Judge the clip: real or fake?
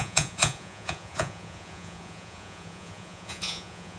fake